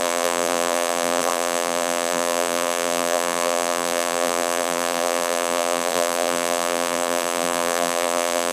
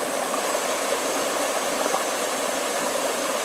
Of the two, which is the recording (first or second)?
second